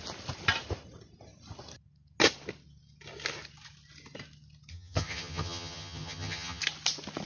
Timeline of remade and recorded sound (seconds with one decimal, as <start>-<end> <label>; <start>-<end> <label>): 0.0-4.7 recorded; 4.7-6.6 remade; 6.6-7.3 recorded